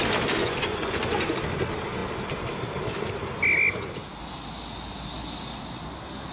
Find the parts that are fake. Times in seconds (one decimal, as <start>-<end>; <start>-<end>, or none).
0.4-1.0